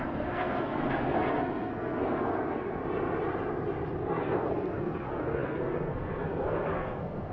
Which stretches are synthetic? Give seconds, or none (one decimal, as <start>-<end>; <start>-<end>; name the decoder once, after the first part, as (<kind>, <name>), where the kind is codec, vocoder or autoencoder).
0.0-2.8 (codec, SNAC); 4.1-7.3